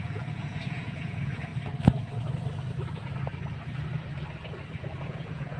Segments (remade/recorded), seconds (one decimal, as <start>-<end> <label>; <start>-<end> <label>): 0.0-1.5 remade; 1.5-4.9 recorded; 4.9-5.6 remade